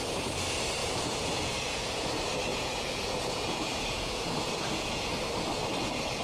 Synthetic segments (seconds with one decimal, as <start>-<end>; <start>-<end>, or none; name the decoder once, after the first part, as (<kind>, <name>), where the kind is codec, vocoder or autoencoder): 0.8-2.1 (vocoder, Vocos); 2.5-5.1